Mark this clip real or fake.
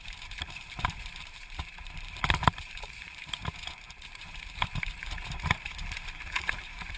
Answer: fake